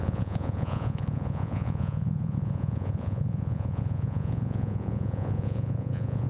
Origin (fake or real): fake